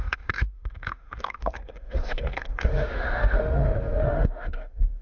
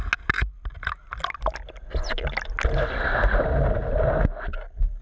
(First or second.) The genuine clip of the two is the second